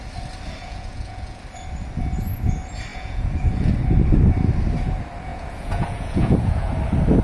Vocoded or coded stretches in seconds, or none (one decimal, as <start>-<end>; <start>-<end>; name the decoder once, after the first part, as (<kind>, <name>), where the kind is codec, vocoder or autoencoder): 0.6-1.4 (vocoder, Vocos); 2.9-3.7; 5.3-6.7